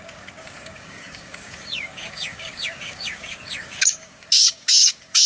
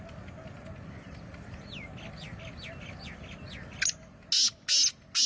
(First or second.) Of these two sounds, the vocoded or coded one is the first